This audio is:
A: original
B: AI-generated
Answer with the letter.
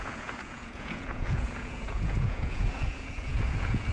B